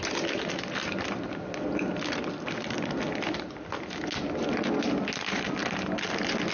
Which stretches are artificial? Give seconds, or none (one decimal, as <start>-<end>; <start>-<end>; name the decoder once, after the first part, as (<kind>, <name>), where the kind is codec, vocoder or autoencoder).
none